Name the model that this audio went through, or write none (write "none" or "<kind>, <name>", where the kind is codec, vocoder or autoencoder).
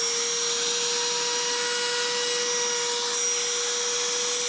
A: none